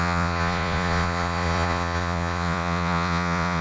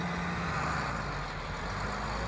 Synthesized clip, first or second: first